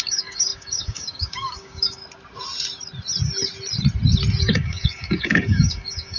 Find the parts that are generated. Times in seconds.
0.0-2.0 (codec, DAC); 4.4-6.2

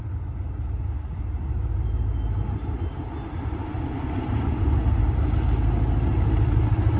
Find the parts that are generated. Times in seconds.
none

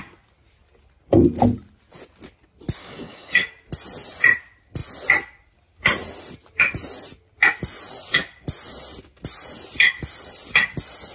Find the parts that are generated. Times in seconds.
2.8-3.5 (codec, DAC)

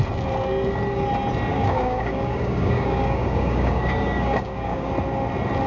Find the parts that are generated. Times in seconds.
1.5-4.9 (codec, DAC)

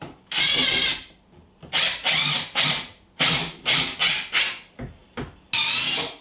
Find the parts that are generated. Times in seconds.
none